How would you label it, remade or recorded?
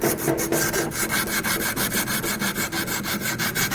recorded